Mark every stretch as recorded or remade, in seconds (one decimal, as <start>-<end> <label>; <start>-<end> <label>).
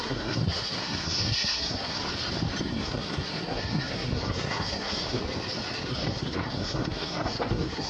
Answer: 0.0-2.0 remade; 2.0-2.6 recorded; 2.6-5.2 remade; 5.2-5.9 recorded; 5.9-7.9 remade